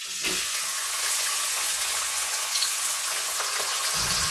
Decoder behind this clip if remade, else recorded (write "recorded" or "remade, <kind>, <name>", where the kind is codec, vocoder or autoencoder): remade, vocoder, Vocos